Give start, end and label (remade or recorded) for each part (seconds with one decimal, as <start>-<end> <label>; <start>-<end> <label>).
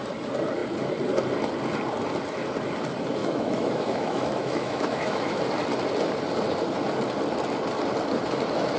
0.0-3.2 recorded; 3.2-5.4 remade; 5.4-8.8 recorded